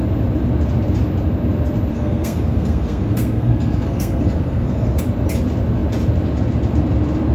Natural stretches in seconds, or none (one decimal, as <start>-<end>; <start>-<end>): 0.0-1.9; 5.0-7.3